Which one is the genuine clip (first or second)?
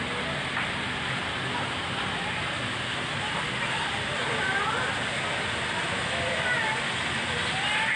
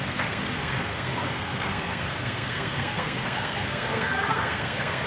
first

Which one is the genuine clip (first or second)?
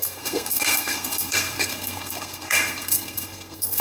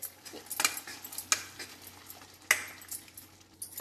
second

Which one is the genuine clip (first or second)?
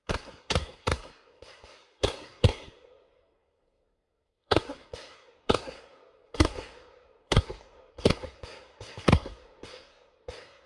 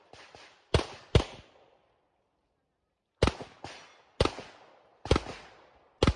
second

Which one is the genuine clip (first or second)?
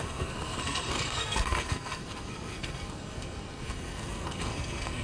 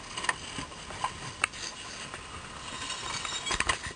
second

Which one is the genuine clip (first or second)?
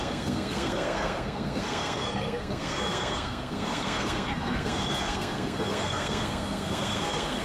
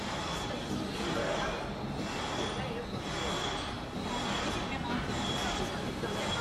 second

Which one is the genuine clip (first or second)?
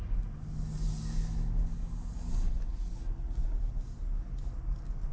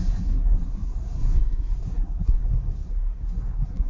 first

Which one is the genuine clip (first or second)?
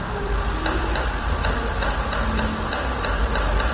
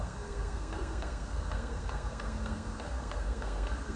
first